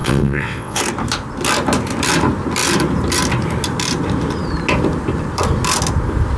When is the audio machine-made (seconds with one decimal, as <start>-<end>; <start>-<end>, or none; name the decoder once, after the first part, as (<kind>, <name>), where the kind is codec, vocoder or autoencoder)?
0.0-0.8 (vocoder, WaveNeXt)